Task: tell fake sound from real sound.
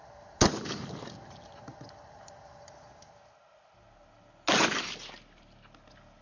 real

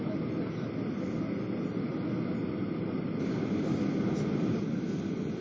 real